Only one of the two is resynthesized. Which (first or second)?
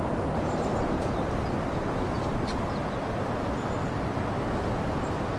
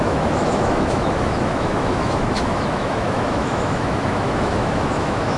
second